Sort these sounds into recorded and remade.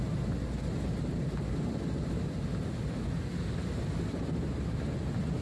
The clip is recorded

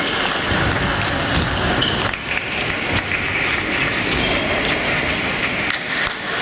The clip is recorded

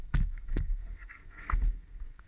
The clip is remade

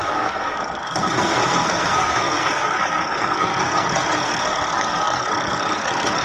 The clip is remade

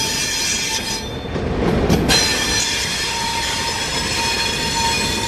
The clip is recorded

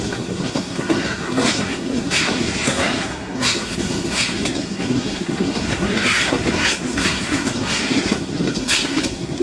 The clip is remade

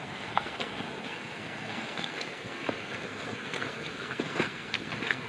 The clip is remade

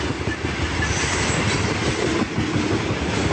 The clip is recorded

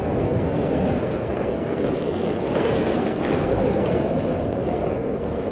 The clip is remade